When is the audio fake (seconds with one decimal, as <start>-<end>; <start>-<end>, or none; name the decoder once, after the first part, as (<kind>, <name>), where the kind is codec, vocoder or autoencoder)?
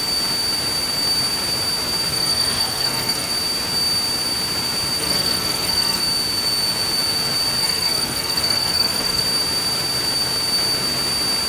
2.1-3.3 (codec, SNAC); 5.0-6.0; 7.6-9.2